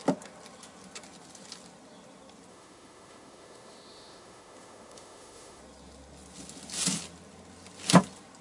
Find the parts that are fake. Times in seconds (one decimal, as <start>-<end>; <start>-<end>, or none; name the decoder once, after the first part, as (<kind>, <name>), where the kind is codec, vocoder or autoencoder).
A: 2.5-5.6 (autoencoder, DAC-VAE)